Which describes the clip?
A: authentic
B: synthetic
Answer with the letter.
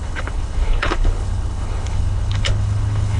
B